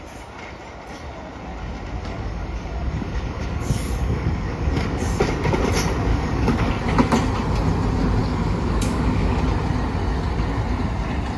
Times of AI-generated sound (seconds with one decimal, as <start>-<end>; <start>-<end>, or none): 2.0-5.2; 6.1-6.7; 8.2-9.4